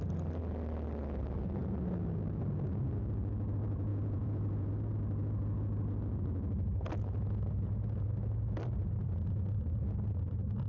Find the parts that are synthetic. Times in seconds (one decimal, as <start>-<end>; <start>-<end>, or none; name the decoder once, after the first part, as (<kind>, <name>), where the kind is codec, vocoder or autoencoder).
3.9-4.7 (vocoder, Vocos)